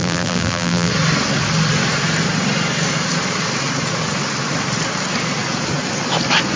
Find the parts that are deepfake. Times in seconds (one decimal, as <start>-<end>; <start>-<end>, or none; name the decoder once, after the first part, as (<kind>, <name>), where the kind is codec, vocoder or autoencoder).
0.0-0.9 (vocoder, BigVGAN v2)